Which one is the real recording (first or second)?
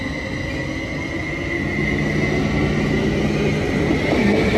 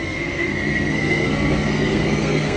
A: first